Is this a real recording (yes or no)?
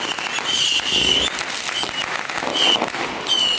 yes